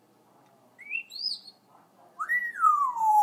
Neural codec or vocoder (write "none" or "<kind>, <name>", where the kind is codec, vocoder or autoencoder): vocoder, BigVGAN v2